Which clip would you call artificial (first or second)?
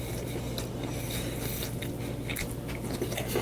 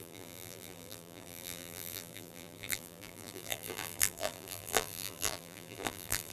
second